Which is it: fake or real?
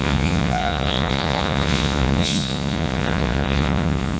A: fake